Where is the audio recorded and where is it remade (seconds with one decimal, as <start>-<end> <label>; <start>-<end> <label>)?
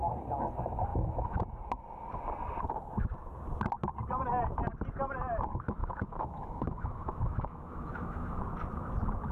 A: 0.0-0.9 recorded; 0.9-1.4 remade; 1.4-5.8 recorded; 5.8-8.4 remade; 8.4-9.3 recorded